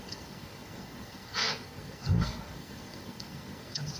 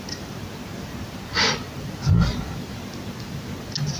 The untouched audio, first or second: second